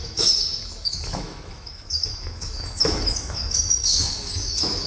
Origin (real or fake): fake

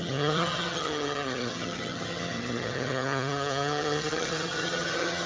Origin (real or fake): fake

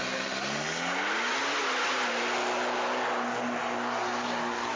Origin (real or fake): real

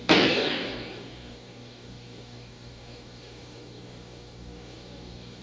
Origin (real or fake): fake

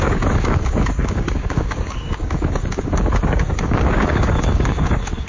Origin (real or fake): fake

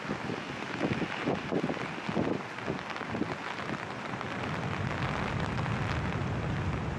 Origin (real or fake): real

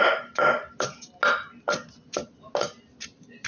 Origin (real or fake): real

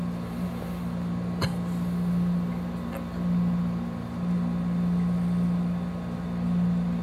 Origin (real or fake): real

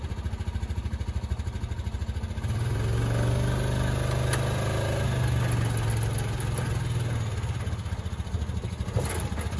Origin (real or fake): real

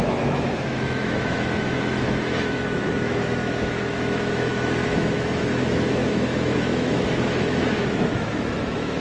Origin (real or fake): fake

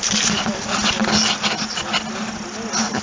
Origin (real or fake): real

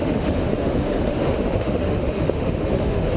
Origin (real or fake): fake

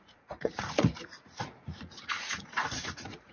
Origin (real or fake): fake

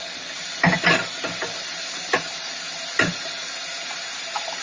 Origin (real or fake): real